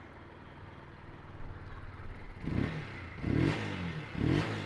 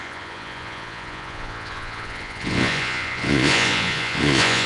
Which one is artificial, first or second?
second